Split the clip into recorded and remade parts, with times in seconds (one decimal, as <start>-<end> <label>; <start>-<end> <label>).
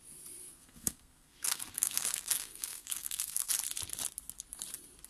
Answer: 0.0-0.4 recorded; 0.4-3.5 remade; 3.5-5.1 recorded